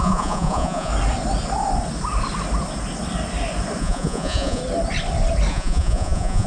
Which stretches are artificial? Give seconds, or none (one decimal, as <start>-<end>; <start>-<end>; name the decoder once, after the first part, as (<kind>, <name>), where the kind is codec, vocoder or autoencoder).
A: 0.0-0.9 (vocoder, Vocos); 3.8-4.6; 5.5-6.5